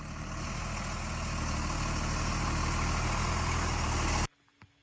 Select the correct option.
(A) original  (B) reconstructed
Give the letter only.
A